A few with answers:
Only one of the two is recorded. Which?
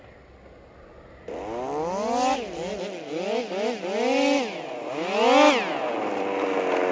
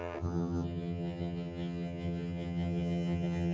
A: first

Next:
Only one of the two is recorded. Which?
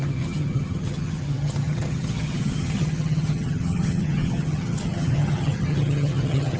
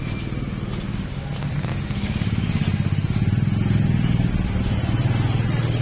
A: second